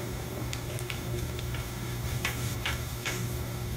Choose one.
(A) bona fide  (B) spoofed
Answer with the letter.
B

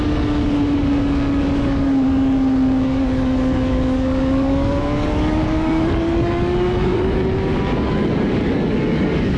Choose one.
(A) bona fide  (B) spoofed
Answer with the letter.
B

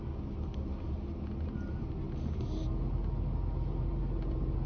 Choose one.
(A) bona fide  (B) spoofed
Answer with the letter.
A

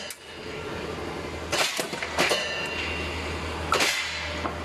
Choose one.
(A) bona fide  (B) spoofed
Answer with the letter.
A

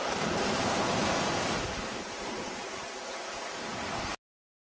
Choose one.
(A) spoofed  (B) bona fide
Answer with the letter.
B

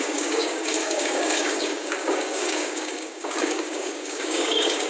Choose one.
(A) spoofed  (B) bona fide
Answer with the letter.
A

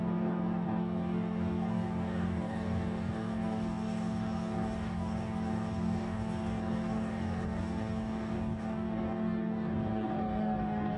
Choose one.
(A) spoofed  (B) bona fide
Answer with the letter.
A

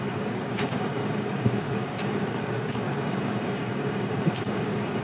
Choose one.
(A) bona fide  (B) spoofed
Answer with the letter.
B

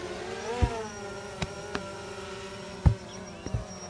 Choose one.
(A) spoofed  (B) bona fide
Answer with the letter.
B